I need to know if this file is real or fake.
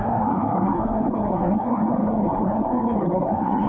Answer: fake